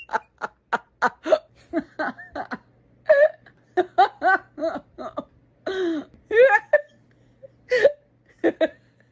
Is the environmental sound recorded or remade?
recorded